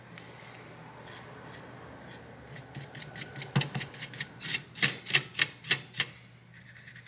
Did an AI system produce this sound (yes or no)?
no